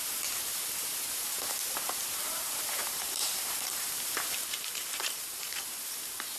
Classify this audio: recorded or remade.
remade